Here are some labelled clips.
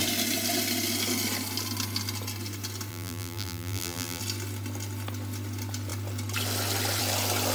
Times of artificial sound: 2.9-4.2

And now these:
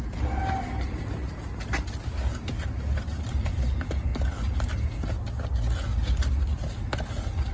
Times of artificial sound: none